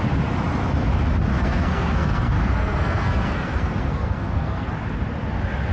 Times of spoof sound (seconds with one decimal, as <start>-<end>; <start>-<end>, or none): 1.3-4.7